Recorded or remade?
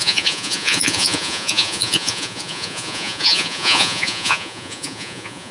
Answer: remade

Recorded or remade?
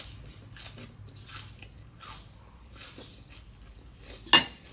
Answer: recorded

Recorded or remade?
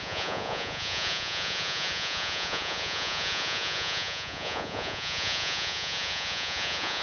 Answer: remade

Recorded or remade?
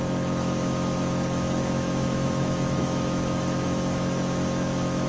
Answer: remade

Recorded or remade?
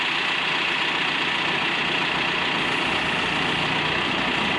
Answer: recorded